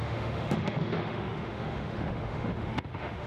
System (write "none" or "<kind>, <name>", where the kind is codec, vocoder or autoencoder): autoencoder, DAC-VAE